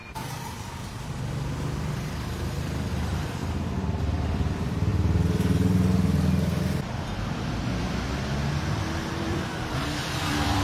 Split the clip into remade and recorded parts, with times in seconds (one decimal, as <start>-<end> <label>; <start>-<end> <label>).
0.0-2.1 recorded; 2.1-3.4 remade; 3.4-4.0 recorded; 4.0-4.9 remade; 4.9-6.6 recorded; 6.6-10.6 remade